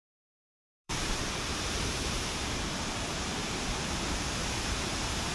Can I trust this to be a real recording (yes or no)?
no